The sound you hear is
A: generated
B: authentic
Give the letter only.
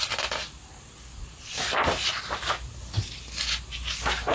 B